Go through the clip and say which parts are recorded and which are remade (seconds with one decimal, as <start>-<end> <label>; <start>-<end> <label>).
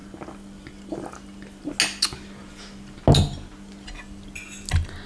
0.0-5.1 recorded